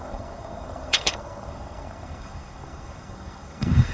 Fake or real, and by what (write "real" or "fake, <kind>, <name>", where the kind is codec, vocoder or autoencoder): fake, codec, SNAC